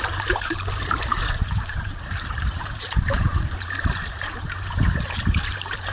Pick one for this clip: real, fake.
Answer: fake